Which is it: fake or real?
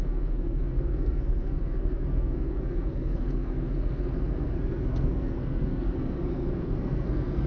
fake